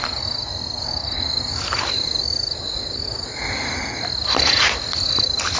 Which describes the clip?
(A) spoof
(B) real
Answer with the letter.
B